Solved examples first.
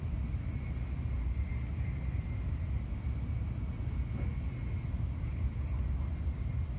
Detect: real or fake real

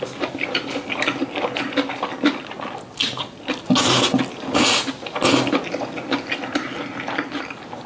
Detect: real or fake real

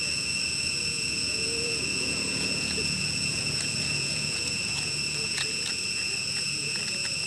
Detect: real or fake fake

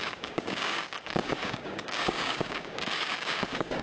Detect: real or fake fake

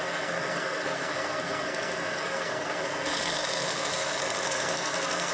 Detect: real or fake fake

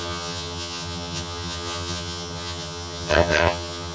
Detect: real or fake fake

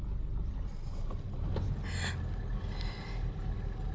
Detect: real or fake real